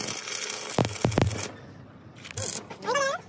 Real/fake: real